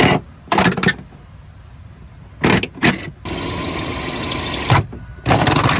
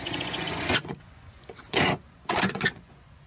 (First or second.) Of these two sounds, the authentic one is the first